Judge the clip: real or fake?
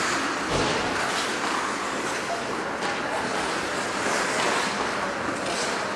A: real